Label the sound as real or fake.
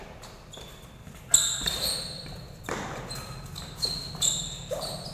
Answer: real